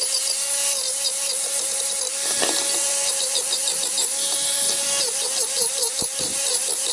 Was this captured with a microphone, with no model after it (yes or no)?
yes